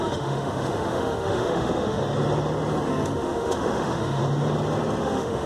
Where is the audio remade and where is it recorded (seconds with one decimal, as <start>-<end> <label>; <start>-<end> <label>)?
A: 0.0-2.0 remade; 2.0-2.9 recorded; 2.9-4.2 remade; 4.2-5.0 recorded; 5.0-5.5 remade